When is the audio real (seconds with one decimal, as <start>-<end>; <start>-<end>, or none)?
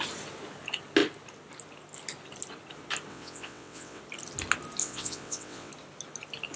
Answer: 0.0-3.1; 4.0-4.8; 5.7-6.6